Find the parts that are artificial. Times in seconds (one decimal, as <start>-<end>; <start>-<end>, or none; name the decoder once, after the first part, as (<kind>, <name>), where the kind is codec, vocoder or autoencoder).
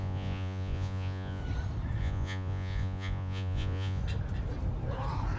0.0-1.4 (vocoder, Vocos); 2.0-4.0